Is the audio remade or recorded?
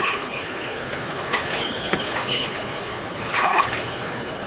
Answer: remade